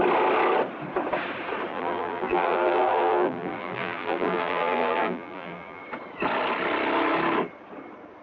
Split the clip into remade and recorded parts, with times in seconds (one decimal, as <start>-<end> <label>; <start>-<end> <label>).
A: 0.0-1.7 recorded; 1.7-5.8 remade; 5.8-8.2 recorded